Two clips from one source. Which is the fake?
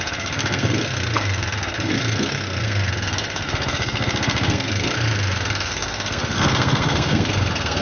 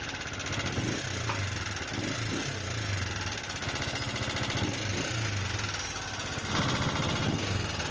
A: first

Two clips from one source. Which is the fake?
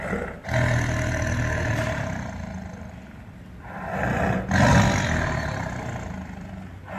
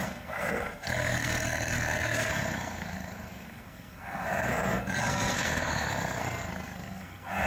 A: second